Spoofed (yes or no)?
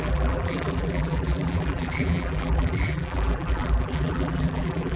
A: yes